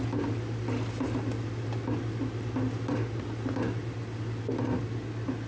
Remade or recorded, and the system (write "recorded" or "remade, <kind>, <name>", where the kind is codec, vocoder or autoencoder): recorded